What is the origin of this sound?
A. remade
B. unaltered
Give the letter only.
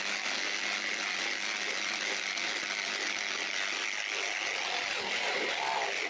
B